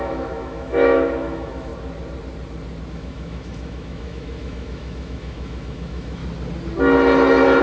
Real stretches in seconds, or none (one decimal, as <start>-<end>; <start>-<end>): 1.7-2.9; 6.2-7.6